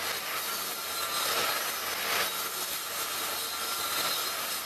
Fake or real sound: real